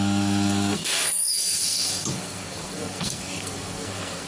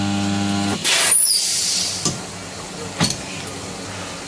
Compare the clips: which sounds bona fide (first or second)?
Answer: second